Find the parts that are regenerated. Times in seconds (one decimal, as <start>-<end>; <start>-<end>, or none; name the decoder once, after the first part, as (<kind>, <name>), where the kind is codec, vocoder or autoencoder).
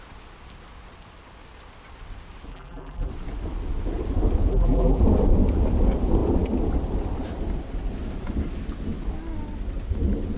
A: 2.5-3.1 (vocoder, BigVGAN v2); 4.5-5.0